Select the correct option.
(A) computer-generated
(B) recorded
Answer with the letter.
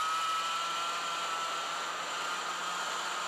B